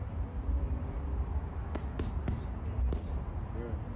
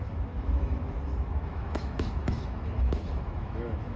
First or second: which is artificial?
second